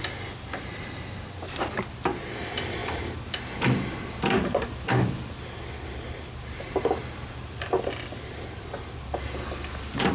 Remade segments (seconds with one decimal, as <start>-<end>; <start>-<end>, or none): none